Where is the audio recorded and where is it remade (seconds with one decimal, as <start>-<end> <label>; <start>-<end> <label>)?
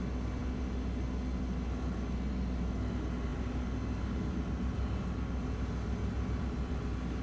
0.0-7.2 recorded